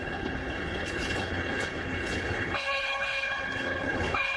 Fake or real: fake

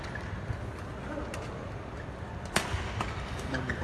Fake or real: real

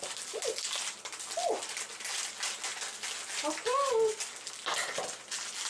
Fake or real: real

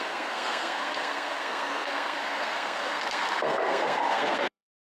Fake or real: fake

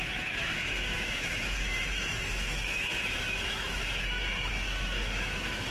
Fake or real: fake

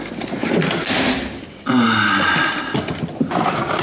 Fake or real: real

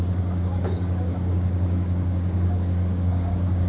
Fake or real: fake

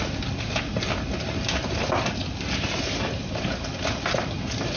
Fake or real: real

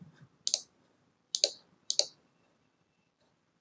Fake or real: real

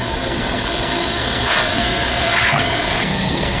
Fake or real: fake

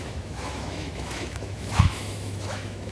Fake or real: fake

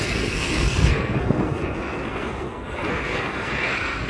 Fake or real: fake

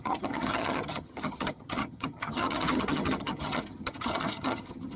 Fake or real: fake